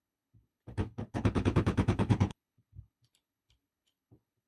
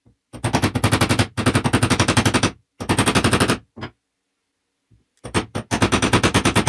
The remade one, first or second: first